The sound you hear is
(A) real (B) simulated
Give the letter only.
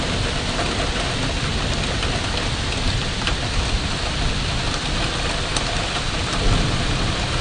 A